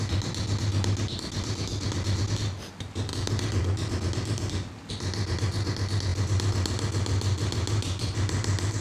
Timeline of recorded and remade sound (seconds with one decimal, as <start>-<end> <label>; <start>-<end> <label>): 0.0-8.8 recorded